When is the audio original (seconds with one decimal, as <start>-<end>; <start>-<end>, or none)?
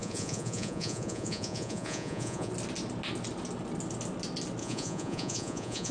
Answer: 2.5-4.6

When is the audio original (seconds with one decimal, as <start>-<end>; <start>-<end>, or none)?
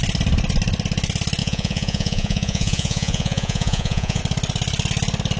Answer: 0.0-1.4; 4.2-5.4